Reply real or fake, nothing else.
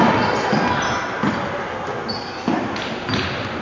real